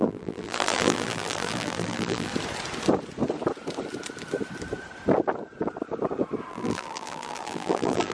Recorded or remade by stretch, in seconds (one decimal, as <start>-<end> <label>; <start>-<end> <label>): 0.0-2.3 remade; 2.3-6.5 recorded; 6.5-8.1 remade